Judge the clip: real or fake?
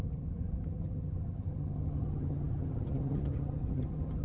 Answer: fake